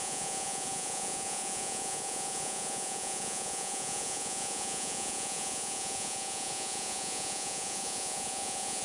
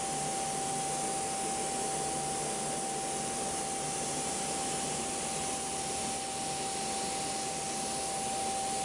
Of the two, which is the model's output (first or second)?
first